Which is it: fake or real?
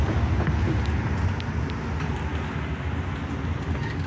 real